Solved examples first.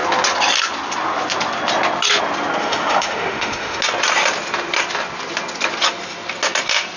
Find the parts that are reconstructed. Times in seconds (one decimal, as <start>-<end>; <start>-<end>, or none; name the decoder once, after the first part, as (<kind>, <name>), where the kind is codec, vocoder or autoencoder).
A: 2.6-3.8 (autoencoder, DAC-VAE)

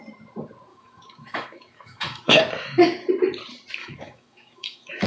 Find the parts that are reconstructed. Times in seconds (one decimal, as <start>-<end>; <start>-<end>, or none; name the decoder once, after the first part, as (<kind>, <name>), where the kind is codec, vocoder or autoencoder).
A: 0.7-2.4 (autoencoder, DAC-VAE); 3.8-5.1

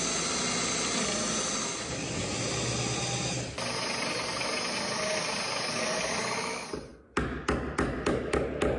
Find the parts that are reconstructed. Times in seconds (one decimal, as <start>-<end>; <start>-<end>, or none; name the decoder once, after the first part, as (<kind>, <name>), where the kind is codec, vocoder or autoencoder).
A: none

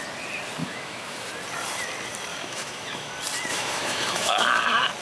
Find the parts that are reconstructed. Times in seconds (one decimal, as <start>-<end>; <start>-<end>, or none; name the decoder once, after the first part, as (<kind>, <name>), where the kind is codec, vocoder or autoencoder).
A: 0.6-1.3 (autoencoder, DAC-VAE); 2.3-3.1; 3.5-4.3

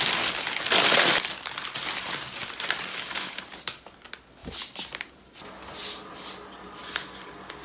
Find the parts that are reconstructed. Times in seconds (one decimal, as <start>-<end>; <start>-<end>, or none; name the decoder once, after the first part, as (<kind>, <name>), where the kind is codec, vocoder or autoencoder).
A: 2.9-3.4 (autoencoder, DAC-VAE)

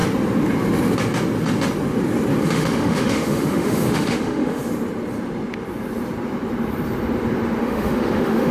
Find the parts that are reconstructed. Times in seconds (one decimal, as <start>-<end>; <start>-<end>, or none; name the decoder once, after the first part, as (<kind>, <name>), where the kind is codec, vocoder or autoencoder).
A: 2.4-4.6 (autoencoder, DAC-VAE); 7.6-8.5

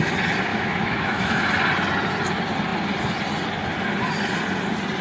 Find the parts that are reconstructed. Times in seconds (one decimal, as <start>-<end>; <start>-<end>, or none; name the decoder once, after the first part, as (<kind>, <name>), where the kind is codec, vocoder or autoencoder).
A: 0.5-1.4 (autoencoder, DAC-VAE)

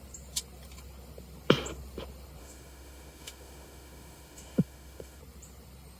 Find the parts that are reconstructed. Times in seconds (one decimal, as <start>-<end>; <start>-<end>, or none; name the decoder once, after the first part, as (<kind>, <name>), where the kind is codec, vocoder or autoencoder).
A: 2.4-5.2 (autoencoder, DAC-VAE)